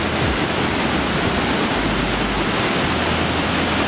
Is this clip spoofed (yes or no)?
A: no